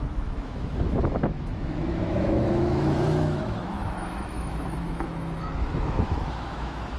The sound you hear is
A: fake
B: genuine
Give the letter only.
A